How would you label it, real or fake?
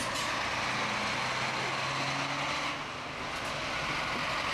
real